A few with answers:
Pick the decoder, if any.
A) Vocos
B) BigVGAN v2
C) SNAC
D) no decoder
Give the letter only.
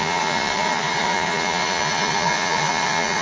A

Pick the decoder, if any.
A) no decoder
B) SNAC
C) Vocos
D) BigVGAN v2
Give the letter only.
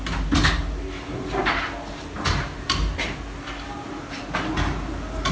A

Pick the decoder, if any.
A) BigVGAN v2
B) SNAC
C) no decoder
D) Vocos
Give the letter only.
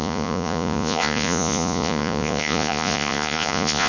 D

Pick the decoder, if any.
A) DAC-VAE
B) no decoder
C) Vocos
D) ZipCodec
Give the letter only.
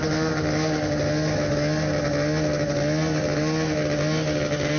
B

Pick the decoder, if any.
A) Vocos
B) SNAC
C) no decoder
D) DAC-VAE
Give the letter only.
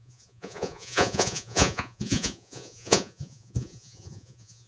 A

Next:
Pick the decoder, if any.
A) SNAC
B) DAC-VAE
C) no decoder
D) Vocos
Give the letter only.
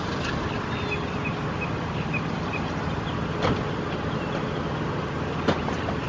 C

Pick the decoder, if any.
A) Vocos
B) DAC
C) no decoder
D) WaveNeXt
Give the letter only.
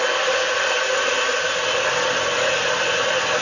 C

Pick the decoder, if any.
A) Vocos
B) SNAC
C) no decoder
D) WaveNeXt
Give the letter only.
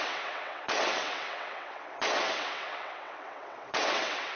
D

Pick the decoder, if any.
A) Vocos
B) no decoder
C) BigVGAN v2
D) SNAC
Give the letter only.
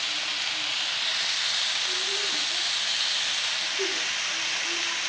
B